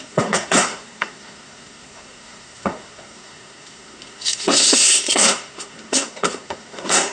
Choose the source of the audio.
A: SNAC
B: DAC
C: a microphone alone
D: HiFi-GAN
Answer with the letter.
A